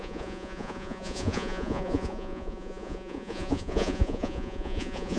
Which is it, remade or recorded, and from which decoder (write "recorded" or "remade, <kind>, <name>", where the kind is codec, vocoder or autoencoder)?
remade, vocoder, Vocos